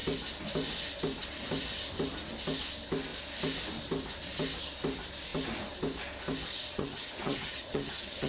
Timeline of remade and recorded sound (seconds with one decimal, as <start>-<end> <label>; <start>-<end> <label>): 0.0-6.5 recorded; 6.5-8.3 remade